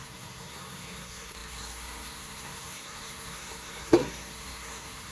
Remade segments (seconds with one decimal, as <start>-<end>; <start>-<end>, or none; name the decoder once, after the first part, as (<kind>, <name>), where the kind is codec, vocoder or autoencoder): 0.0-5.1 (codec, SNAC)